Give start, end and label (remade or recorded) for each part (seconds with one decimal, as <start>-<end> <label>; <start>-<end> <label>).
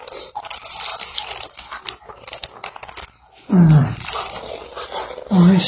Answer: 0.0-5.7 recorded